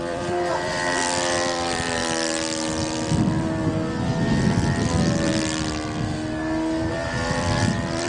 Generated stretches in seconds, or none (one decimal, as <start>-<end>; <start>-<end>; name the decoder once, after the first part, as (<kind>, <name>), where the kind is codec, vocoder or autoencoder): 0.0-2.0 (vocoder, BigVGAN v2); 6.9-8.1